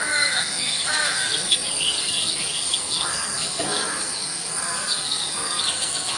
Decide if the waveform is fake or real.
fake